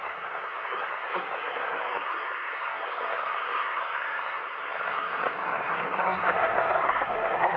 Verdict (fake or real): fake